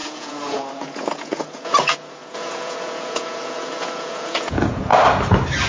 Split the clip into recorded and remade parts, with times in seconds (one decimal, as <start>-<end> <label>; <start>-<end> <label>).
0.0-4.9 remade; 4.9-5.7 recorded